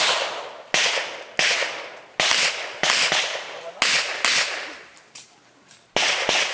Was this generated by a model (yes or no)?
no